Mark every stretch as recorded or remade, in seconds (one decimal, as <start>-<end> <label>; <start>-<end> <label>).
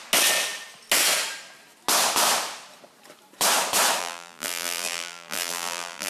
0.0-4.0 recorded; 4.0-6.1 remade